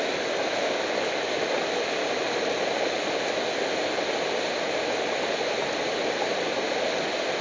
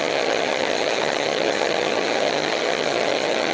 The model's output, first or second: second